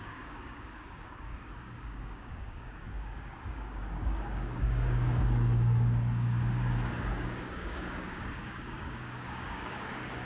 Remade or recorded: remade